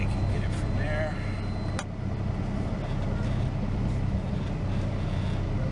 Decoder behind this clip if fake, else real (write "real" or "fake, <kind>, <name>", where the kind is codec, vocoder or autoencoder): real